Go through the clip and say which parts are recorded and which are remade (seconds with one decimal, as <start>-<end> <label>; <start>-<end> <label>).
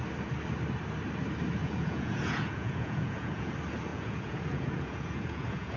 0.0-1.6 recorded; 1.6-3.5 remade; 3.5-3.9 recorded; 3.9-5.8 remade